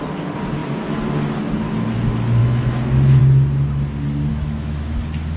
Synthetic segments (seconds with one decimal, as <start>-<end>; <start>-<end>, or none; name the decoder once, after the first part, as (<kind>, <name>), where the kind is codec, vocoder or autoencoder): 2.4-3.2 (autoencoder, DAC-VAE); 4.3-5.0